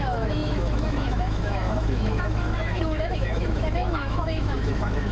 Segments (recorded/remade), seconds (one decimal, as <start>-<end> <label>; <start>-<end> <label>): 0.0-5.1 remade